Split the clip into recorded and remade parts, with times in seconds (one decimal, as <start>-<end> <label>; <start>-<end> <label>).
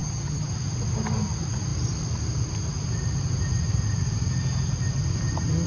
0.0-0.5 remade; 0.5-5.7 recorded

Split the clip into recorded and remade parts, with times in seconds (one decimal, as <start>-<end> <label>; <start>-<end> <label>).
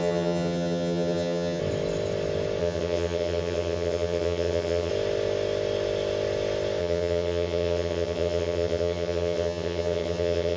0.0-1.6 remade; 1.6-2.6 recorded; 2.6-4.9 remade; 4.9-6.8 recorded; 6.8-10.6 remade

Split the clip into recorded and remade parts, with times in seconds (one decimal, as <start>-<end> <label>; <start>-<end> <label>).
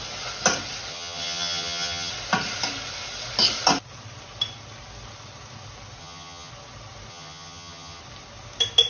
0.0-0.9 recorded; 0.9-2.1 remade; 2.1-6.0 recorded; 6.0-6.5 remade; 6.5-7.1 recorded; 7.1-8.0 remade; 8.0-8.9 recorded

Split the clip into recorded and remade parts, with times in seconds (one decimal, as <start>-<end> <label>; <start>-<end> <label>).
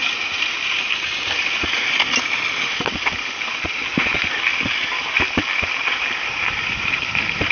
0.0-7.5 recorded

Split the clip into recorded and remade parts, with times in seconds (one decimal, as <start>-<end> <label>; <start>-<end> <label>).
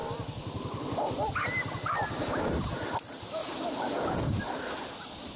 0.0-5.4 recorded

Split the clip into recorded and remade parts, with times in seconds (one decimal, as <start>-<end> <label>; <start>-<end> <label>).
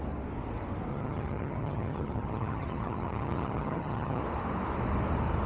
0.0-0.9 recorded; 0.9-4.2 remade; 4.2-5.5 recorded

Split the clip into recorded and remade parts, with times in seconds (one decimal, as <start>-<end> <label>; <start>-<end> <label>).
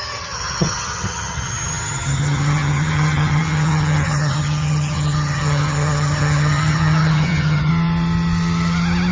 0.0-7.7 remade; 7.7-9.1 recorded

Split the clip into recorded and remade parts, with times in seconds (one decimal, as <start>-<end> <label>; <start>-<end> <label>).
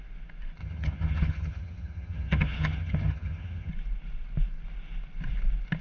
0.0-0.6 recorded; 0.6-3.7 remade; 3.7-5.8 recorded